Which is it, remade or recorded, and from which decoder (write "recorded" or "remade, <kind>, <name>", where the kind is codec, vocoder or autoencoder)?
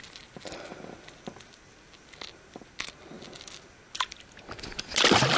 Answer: recorded